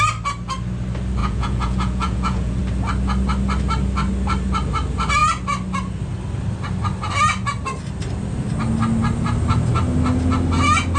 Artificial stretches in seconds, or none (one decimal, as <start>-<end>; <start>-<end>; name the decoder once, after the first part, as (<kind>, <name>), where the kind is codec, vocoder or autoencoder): 1.2-2.6 (vocoder, Vocos)